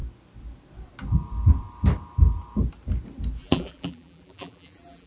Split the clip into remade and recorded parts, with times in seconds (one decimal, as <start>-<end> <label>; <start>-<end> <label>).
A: 0.0-3.4 recorded; 3.4-5.1 remade